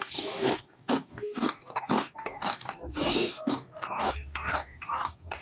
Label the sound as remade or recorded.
remade